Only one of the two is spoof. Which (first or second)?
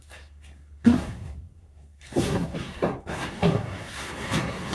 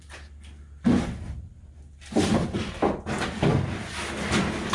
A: first